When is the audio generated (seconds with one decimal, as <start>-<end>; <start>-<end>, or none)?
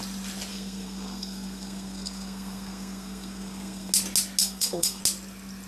0.5-3.9; 4.4-5.0